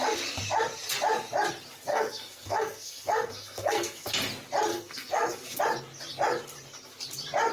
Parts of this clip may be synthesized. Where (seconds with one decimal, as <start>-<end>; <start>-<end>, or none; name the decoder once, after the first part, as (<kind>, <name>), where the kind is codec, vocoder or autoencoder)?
1.9-4.1 (codec, SNAC); 4.7-5.6